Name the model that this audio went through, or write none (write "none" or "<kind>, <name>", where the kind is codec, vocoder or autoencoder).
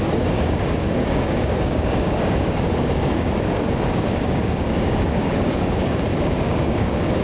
codec, DAC